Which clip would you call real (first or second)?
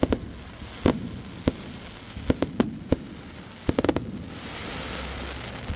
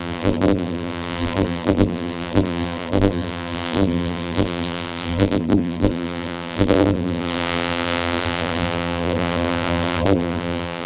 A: first